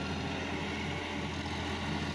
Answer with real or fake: real